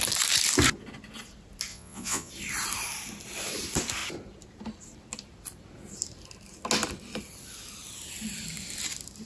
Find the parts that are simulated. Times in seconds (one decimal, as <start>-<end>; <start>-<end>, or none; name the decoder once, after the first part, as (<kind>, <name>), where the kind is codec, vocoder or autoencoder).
1.7-2.3 (vocoder, Vocos)